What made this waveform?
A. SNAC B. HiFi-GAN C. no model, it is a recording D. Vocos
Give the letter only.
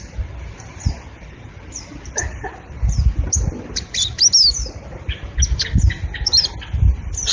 C